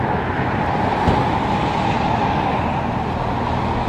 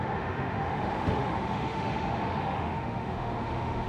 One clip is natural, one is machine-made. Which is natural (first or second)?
first